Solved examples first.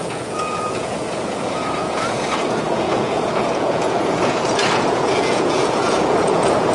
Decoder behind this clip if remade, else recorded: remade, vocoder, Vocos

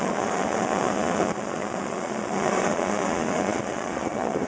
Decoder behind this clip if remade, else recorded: remade, vocoder, Vocos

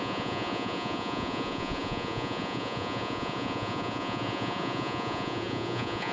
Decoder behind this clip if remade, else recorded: remade, vocoder, Vocos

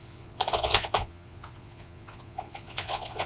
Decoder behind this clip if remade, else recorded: remade, vocoder, Vocos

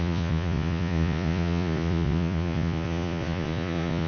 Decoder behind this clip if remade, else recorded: remade, vocoder, Vocos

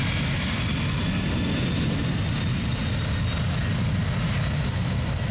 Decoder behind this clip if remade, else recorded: recorded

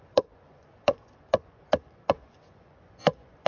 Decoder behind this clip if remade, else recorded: remade, vocoder, Vocos